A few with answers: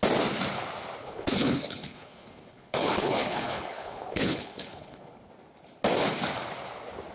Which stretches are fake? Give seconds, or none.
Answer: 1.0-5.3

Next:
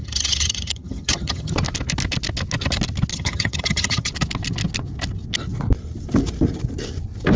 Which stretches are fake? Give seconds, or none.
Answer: 0.0-1.5; 3.1-4.1